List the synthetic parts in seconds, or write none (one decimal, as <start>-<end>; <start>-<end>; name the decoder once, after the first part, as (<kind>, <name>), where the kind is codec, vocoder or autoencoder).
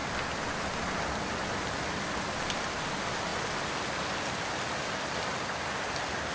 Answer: none